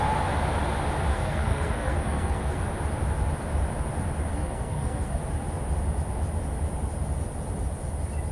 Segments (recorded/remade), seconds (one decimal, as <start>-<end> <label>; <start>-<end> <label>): 0.0-1.1 recorded; 1.1-2.6 remade; 2.6-4.3 recorded; 4.3-5.2 remade; 5.2-8.3 recorded

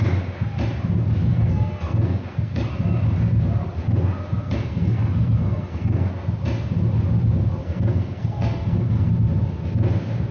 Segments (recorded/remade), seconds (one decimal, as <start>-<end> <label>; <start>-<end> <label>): 0.0-1.3 recorded; 1.3-2.7 remade; 2.7-4.4 recorded; 4.4-6.1 remade; 6.1-7.6 recorded; 7.6-9.1 remade; 9.1-10.3 recorded

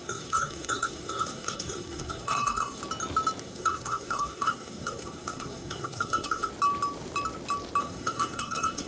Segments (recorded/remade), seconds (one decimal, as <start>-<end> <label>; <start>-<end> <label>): 0.0-2.8 remade; 2.8-3.4 recorded; 3.4-6.5 remade; 6.5-7.8 recorded; 7.8-8.9 remade

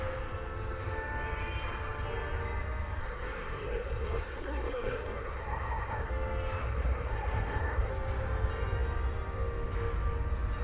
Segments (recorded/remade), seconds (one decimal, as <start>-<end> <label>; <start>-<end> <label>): 0.0-3.0 recorded; 3.0-6.1 remade; 6.1-6.6 recorded; 6.6-7.9 remade; 7.9-10.6 recorded

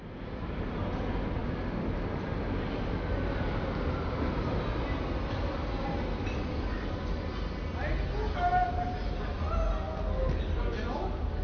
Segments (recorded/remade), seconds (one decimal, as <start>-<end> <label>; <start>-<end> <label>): 0.0-11.4 recorded

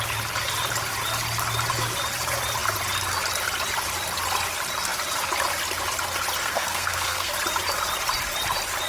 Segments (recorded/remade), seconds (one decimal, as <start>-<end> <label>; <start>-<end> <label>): 0.0-6.4 recorded; 6.4-7.3 remade; 7.3-8.9 recorded